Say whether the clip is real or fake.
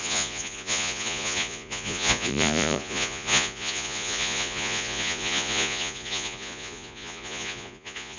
fake